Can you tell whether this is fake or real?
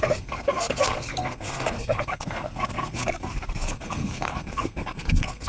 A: fake